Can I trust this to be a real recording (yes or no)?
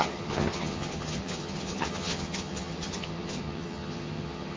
no